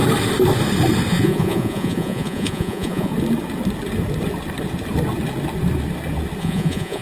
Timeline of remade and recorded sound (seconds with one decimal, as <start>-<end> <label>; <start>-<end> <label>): 0.0-1.1 recorded; 1.1-3.1 remade; 3.1-6.4 recorded; 6.4-7.0 remade